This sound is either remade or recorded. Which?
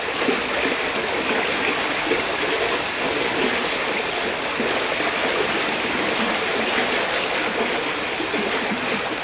recorded